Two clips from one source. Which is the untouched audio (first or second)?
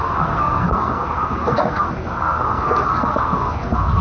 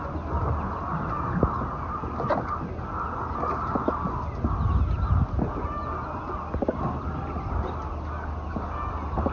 second